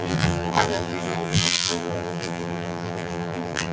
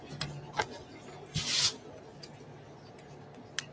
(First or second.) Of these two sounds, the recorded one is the second